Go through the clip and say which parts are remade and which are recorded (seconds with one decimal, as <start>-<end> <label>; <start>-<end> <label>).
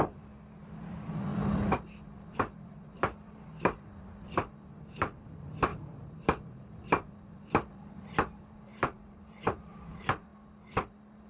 0.0-5.7 recorded; 5.7-7.1 remade; 7.1-8.7 recorded; 8.7-9.6 remade; 9.6-11.3 recorded